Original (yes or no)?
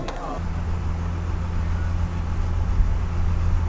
yes